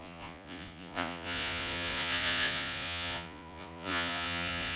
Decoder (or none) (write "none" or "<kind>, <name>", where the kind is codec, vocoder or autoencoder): vocoder, Vocos